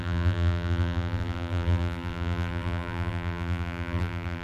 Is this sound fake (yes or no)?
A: yes